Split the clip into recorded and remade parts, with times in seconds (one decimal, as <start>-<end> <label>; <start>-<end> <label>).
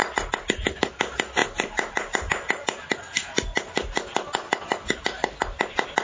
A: 0.0-6.0 recorded